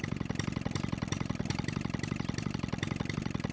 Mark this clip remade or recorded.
recorded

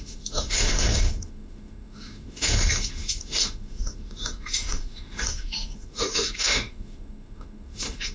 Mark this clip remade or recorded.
remade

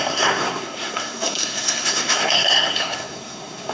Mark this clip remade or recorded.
remade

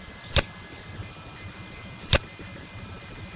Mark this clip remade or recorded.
recorded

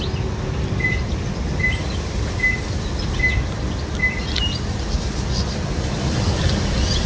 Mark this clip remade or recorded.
recorded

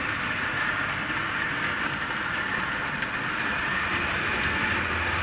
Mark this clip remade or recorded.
recorded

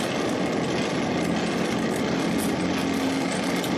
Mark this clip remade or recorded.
recorded